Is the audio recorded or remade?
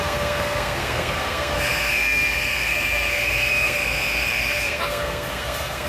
remade